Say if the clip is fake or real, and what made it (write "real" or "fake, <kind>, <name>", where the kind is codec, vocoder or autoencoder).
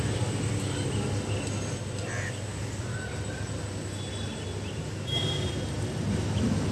real